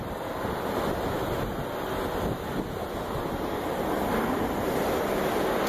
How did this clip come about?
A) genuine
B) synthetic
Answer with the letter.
A